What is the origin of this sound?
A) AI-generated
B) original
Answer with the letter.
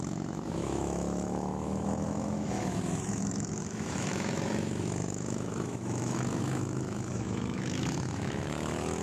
A